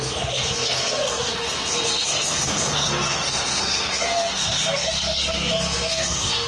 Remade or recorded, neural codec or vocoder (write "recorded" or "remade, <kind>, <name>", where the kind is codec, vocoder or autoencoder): remade, codec, SNAC